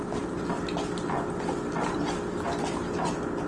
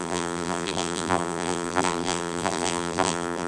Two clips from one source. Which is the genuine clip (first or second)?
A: first